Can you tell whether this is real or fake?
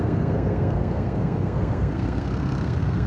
fake